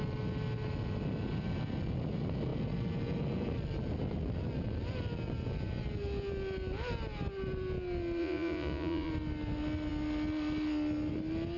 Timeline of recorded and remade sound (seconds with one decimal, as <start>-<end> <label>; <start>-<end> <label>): 0.0-8.2 recorded; 8.2-9.1 remade; 9.1-11.6 recorded